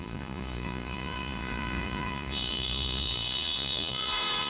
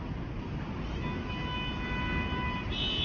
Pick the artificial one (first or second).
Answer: first